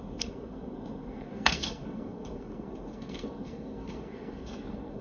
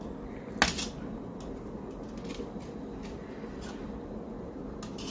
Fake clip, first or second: first